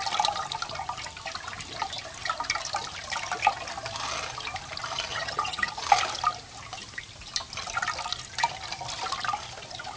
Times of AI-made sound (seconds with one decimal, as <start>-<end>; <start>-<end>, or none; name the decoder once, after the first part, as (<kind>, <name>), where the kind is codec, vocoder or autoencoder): 5.1-5.7 (vocoder, HiFi-GAN)